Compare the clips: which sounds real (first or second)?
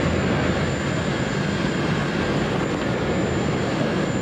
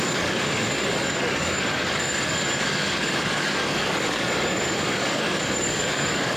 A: first